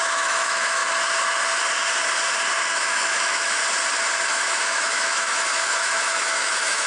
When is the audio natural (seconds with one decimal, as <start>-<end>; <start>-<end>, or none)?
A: 0.8-2.7; 3.6-4.3